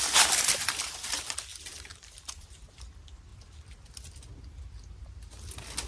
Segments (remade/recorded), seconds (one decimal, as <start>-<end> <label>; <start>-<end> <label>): 0.0-1.5 recorded; 1.5-2.6 remade; 2.6-5.9 recorded